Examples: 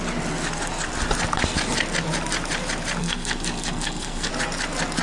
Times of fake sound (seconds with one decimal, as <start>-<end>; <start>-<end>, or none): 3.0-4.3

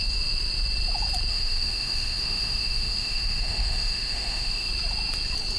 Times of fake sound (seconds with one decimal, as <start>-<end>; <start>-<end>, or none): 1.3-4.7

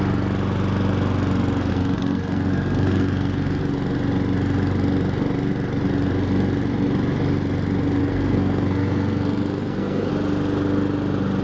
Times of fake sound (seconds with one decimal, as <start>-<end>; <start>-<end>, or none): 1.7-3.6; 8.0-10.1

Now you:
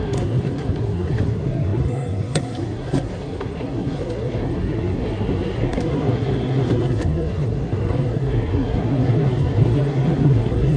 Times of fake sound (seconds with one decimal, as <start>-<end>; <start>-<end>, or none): 0.0-10.8